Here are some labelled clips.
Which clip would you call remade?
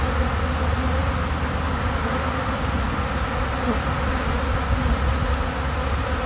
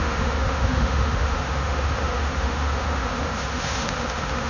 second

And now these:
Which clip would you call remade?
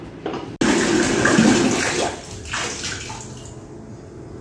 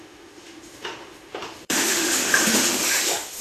second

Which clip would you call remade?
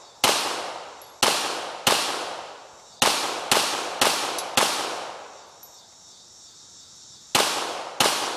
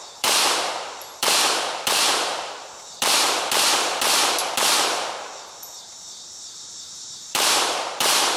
second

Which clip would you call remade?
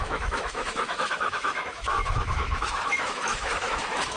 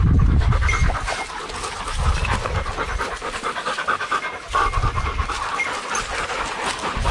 first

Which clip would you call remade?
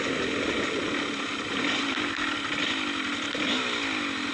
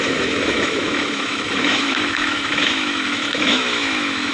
second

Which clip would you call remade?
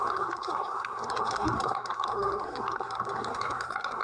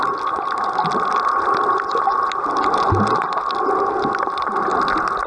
first